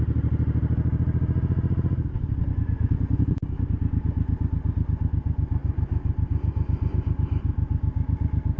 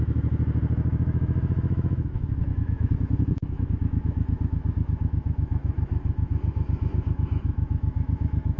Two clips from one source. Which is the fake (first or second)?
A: second